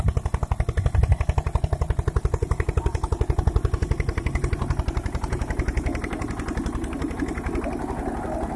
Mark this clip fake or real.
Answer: real